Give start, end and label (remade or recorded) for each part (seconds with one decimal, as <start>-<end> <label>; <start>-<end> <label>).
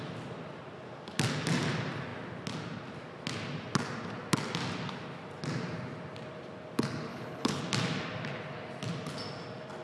0.0-7.1 recorded; 7.1-7.6 remade; 7.6-9.8 recorded